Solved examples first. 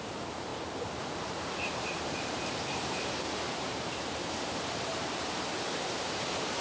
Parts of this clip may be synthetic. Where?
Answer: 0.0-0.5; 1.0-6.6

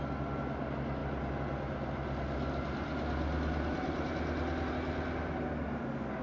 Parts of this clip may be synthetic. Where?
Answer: none

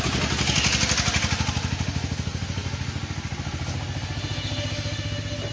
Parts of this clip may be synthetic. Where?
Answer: none

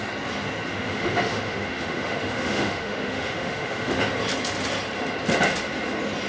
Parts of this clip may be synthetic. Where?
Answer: 0.7-4.0